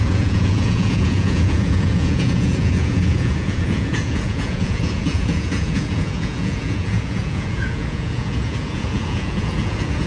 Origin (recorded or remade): remade